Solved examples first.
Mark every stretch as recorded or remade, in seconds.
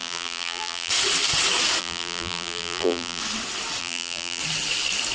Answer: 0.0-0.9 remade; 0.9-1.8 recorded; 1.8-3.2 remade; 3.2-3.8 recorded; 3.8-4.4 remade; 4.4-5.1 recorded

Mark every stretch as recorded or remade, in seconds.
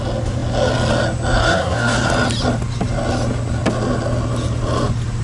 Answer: 0.0-1.4 recorded; 1.4-2.1 remade; 2.1-5.2 recorded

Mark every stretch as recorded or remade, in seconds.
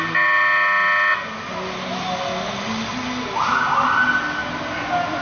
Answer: 0.0-5.2 recorded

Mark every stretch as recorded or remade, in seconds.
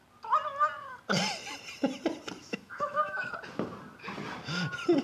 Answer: 0.0-2.4 recorded; 2.4-3.3 remade; 3.3-5.0 recorded